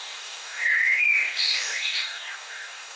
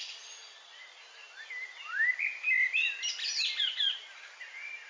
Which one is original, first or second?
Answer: second